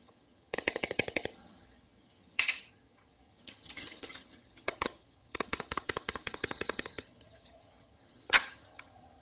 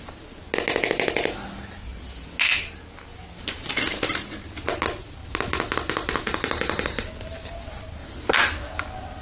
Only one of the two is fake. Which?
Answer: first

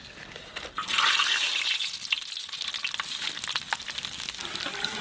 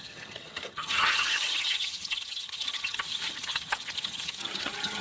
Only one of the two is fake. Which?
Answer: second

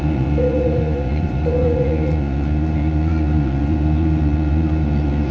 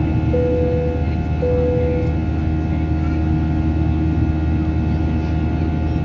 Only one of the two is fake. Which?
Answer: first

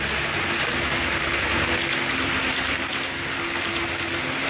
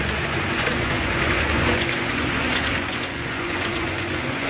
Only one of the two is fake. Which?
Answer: second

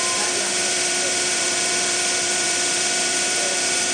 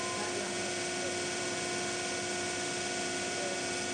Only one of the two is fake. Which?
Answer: first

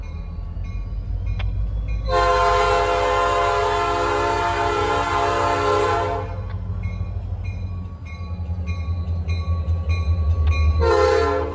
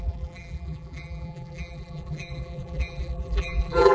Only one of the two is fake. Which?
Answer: second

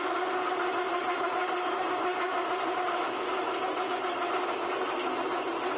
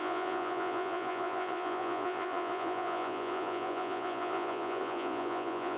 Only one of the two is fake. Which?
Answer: second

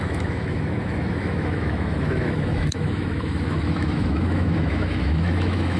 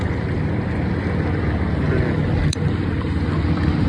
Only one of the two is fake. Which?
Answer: first